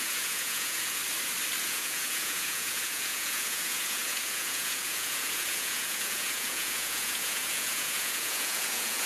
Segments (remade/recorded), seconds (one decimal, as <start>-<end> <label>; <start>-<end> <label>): 0.0-1.0 remade; 1.0-1.6 recorded; 1.6-9.1 remade